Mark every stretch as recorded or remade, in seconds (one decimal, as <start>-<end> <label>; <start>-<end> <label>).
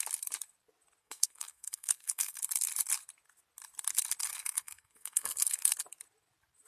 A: 0.0-1.0 recorded; 1.0-2.4 remade; 2.4-4.3 recorded; 4.3-5.7 remade; 5.7-6.7 recorded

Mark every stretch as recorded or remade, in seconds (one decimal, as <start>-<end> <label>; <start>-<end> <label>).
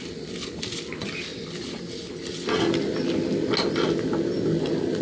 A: 0.0-5.0 recorded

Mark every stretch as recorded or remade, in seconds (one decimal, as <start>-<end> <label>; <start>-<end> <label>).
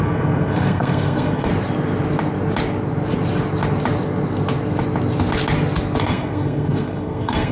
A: 0.0-1.5 remade; 1.5-6.0 recorded; 6.0-7.5 remade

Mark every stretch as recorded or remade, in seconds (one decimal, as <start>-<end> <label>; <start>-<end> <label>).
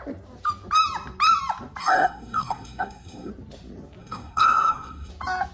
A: 0.0-1.8 recorded; 1.8-3.3 remade; 3.3-4.0 recorded; 4.0-5.1 remade; 5.1-5.5 recorded